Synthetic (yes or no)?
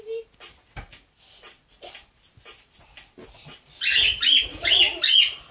no